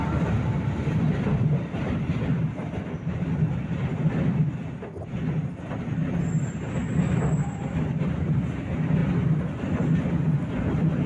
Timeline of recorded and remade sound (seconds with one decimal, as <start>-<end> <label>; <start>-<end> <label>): 0.0-11.1 recorded